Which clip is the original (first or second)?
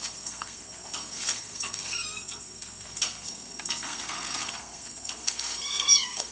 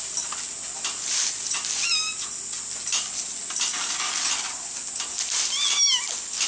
second